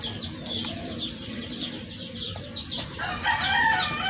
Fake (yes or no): no